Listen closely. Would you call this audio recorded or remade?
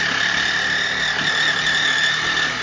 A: recorded